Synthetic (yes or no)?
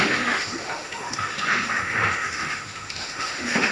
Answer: yes